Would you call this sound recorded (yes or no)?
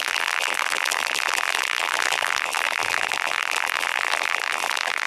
no